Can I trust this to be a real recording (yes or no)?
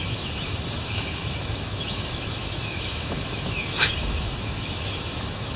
no